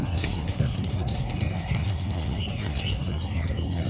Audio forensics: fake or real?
fake